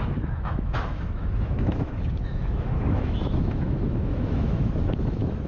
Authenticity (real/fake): fake